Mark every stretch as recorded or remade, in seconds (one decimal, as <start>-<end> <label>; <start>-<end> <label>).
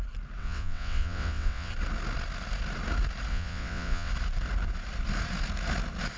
0.0-0.4 recorded; 0.4-1.7 remade; 1.7-3.3 recorded; 3.3-4.1 remade; 4.1-6.2 recorded